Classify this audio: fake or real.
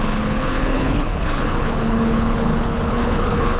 fake